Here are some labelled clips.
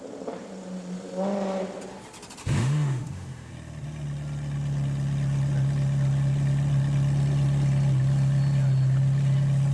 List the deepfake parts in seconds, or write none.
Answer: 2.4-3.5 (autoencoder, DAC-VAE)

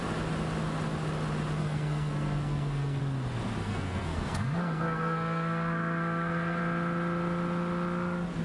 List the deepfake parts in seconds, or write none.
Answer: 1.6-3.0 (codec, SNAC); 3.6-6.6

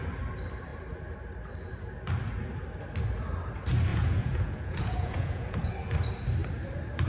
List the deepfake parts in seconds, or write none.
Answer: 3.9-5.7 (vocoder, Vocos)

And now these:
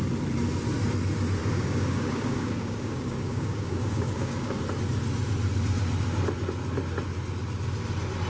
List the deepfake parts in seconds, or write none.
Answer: 1.4-4.6 (codec, DAC)

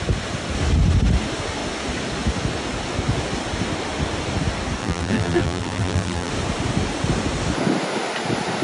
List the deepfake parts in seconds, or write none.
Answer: 4.8-6.3 (vocoder, BigVGAN v2)